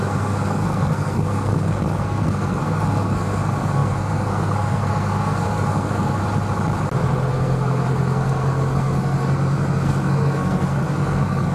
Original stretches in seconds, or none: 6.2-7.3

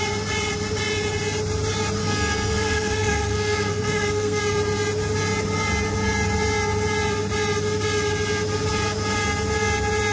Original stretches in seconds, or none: 0.0-2.0; 4.4-10.1

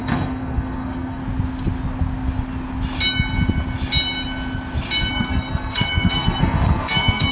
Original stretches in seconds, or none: 1.2-5.1

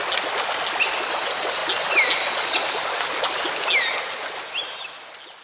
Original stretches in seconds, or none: 0.0-5.4

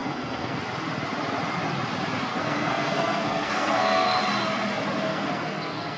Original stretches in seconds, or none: 0.6-2.3; 4.2-5.1

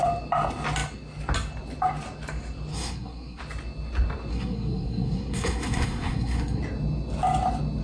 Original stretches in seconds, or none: 0.0-2.7; 3.4-4.3; 6.6-7.8

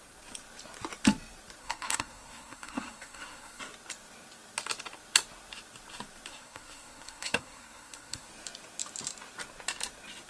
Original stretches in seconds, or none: 0.0-1.6; 3.6-6.3; 8.3-10.3

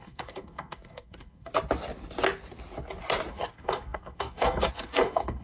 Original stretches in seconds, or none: 1.5-3.3